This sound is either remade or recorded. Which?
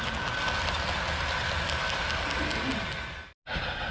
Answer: recorded